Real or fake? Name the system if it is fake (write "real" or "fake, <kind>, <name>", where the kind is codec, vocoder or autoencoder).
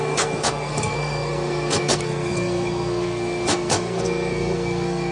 fake, codec, SNAC